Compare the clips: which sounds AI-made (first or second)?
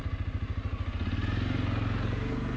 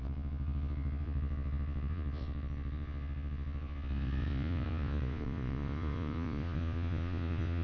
second